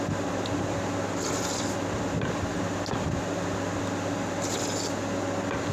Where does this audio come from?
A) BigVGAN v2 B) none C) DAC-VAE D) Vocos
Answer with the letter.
B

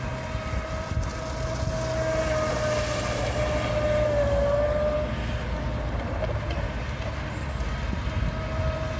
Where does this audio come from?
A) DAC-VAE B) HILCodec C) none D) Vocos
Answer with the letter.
C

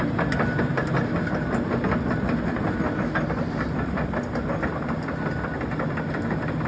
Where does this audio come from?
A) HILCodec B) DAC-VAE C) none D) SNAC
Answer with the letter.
C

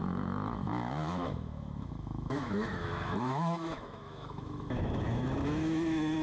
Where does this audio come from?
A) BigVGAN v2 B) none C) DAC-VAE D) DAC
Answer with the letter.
C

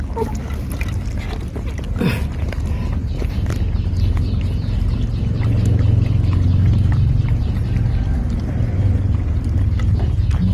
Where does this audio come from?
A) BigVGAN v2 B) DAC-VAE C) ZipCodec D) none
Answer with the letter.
D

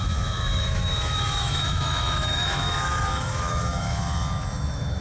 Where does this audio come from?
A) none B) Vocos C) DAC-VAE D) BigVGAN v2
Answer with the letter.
C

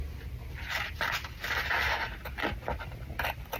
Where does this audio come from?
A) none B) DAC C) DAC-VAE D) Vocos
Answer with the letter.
A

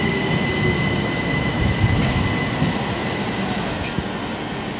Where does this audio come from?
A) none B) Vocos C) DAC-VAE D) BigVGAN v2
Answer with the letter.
A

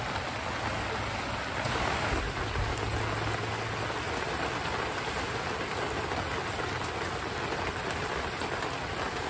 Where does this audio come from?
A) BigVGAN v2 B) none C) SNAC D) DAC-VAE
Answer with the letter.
B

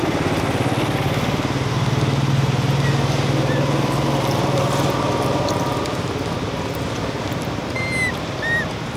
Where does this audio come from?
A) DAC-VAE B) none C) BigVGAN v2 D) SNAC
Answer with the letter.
B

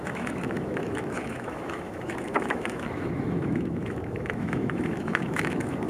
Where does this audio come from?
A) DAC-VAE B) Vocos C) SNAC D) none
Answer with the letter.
A